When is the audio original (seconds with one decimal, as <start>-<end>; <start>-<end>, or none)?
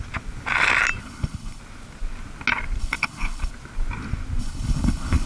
0.0-1.0; 1.6-2.8; 3.5-4.4